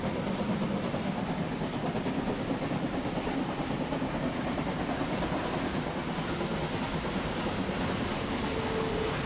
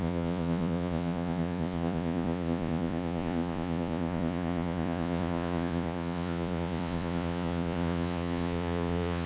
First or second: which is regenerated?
second